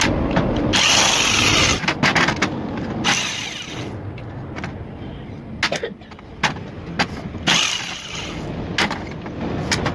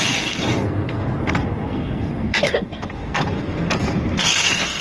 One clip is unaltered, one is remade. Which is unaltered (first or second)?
first